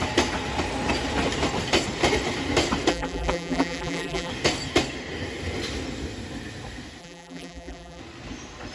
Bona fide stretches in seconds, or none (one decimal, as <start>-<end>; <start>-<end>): 0.0-2.9; 4.3-7.0; 8.0-8.7